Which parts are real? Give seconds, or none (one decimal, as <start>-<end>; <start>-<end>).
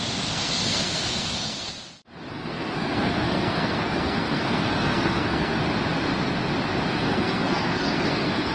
1.7-2.3; 5.6-6.9